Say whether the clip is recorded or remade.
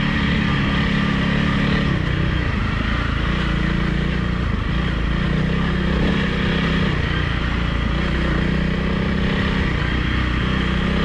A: recorded